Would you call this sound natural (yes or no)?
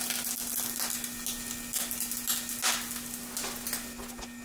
yes